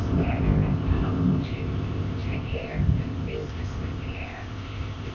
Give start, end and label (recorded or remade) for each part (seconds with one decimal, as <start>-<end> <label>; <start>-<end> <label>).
0.0-5.1 remade